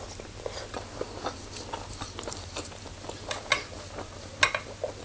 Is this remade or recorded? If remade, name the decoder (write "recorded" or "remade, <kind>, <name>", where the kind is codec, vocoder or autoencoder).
recorded